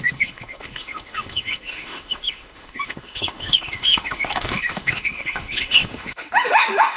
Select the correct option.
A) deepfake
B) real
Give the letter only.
A